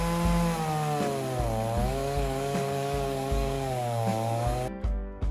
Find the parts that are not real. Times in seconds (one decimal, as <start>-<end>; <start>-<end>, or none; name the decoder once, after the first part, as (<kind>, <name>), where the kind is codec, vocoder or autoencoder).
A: 1.8-5.3 (codec, DAC)